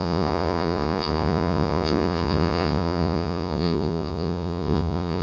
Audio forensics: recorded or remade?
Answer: remade